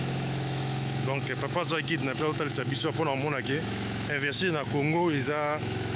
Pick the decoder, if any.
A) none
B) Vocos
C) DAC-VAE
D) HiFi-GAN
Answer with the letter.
C